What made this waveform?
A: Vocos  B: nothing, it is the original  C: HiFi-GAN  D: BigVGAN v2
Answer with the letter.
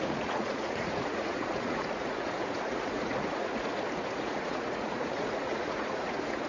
A